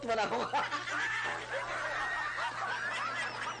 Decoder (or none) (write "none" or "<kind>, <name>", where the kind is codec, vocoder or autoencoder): none